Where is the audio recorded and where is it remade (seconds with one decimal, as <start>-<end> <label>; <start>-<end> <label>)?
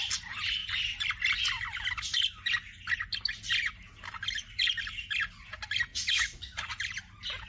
0.0-5.9 recorded; 5.9-6.7 remade; 6.7-7.5 recorded